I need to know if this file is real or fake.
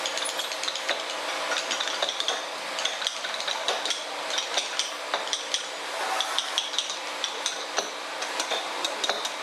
real